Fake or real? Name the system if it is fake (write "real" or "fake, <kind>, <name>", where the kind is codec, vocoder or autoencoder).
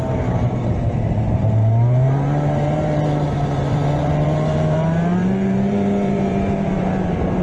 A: fake, vocoder, BigVGAN v2